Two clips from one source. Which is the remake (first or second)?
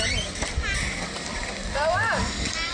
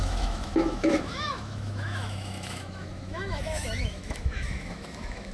second